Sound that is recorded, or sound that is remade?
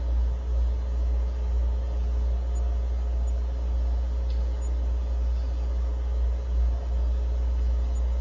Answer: recorded